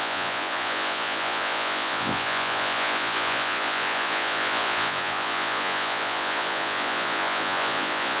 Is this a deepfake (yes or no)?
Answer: yes